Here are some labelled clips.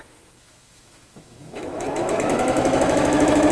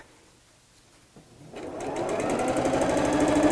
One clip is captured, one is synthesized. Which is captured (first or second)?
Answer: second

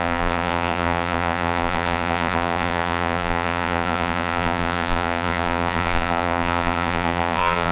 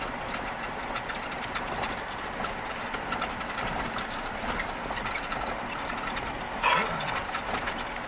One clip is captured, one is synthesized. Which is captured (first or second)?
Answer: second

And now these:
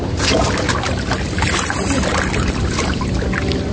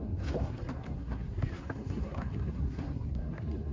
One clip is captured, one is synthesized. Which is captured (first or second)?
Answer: first